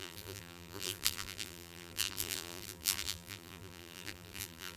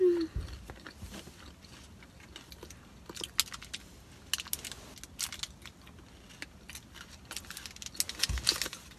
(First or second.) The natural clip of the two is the second